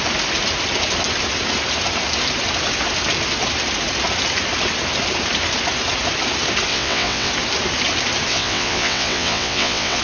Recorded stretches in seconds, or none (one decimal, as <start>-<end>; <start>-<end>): 0.0-6.7; 7.3-8.3